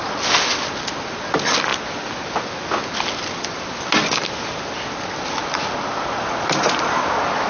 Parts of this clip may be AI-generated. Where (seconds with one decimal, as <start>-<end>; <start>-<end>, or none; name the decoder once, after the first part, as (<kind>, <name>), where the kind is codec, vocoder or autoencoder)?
none

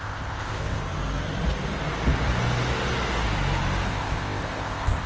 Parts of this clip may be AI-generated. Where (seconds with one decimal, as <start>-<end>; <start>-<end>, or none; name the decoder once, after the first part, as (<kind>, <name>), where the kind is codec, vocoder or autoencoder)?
0.0-0.8 (codec, ZipCodec); 3.9-5.1